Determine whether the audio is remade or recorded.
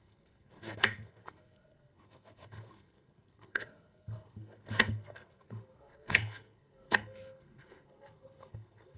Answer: remade